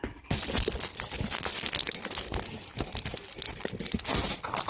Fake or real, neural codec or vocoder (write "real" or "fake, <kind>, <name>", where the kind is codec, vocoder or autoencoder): real